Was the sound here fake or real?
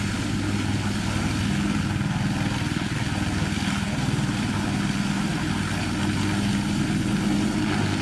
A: real